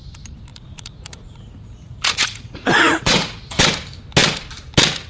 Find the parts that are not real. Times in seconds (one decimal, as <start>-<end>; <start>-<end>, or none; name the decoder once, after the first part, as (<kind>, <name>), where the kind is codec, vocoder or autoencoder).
0.5-3.6 (vocoder, Vocos)